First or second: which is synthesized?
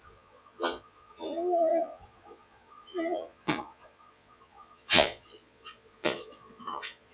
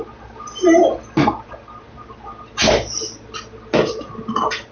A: first